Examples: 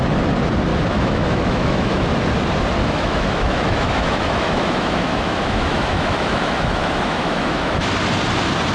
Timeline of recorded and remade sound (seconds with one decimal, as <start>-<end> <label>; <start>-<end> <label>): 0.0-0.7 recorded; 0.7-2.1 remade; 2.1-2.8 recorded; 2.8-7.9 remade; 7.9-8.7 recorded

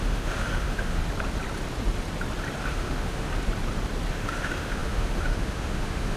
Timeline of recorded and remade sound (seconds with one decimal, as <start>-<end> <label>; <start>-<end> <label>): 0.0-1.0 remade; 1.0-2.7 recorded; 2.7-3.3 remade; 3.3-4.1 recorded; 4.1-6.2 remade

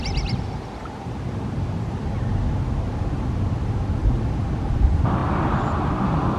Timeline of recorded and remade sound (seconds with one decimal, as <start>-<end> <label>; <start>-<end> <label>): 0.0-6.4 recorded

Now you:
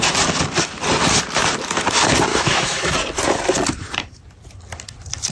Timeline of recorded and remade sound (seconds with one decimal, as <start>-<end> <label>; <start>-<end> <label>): 0.0-2.3 recorded; 2.3-2.9 remade; 2.9-5.3 recorded

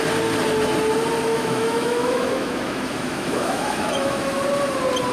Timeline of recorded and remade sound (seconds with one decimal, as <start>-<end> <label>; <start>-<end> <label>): 0.0-1.3 recorded; 1.3-4.4 remade; 4.4-5.1 recorded